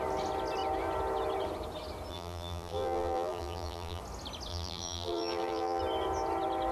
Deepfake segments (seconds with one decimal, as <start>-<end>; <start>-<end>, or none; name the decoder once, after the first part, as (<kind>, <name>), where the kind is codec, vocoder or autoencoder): 2.1-4.0 (vocoder, BigVGAN v2); 4.5-5.8